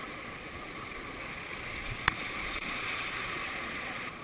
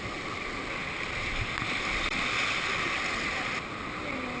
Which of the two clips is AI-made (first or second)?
first